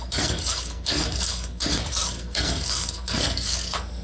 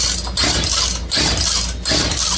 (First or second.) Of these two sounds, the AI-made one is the first